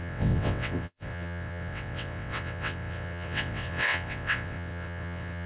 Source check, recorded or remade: remade